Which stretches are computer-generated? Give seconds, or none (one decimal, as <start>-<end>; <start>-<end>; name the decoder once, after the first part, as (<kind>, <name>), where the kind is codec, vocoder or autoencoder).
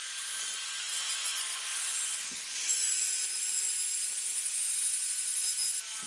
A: 0.0-3.7 (vocoder, Vocos)